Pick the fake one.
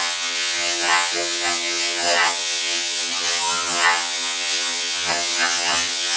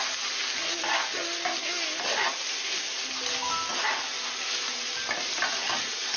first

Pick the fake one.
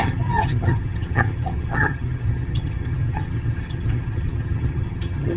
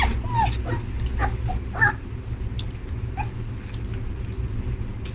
first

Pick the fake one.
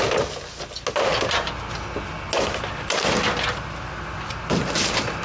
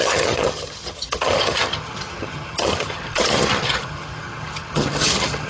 second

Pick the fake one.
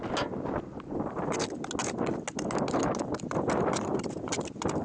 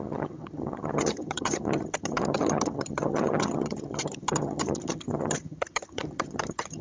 second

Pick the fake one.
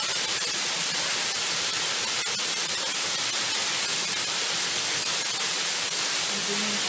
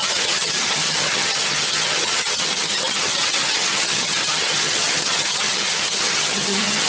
second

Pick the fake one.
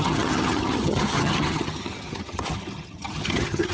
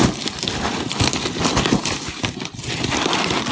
first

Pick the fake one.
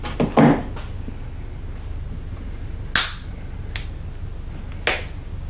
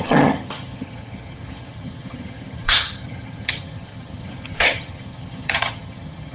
second